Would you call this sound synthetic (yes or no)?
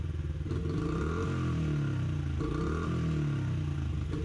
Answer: no